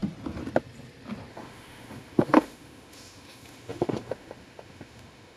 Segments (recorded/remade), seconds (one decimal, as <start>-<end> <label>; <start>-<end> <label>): 0.0-1.3 recorded; 1.3-5.4 remade